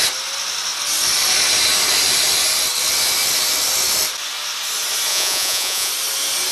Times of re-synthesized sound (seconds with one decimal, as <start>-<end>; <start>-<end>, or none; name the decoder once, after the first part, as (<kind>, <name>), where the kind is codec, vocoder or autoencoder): 5.1-5.9 (vocoder, Vocos)